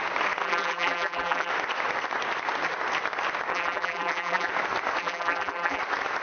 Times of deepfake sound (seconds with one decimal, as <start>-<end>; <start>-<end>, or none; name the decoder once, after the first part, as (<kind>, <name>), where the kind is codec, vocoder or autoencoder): 0.4-1.5 (vocoder, BigVGAN v2); 3.5-4.5; 5.0-5.8